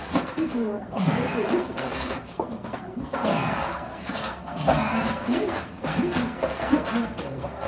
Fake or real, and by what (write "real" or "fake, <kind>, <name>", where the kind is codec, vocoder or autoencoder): fake, codec, SNAC